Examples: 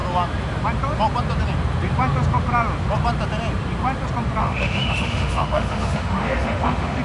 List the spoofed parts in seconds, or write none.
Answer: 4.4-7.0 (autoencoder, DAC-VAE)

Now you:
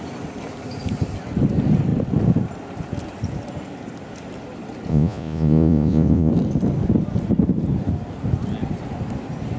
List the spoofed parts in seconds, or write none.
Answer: 4.9-6.3 (vocoder, Vocos)